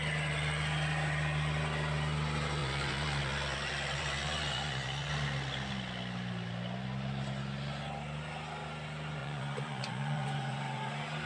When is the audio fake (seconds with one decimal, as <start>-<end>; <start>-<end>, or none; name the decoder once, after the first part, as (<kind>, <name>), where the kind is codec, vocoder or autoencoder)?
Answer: 2.6-5.1 (vocoder, Vocos); 9.2-10.9